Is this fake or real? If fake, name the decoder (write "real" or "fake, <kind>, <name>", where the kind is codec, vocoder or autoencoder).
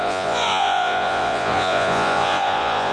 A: fake, vocoder, Vocos